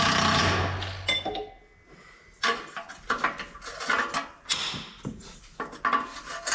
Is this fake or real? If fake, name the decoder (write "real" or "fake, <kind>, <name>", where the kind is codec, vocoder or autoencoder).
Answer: real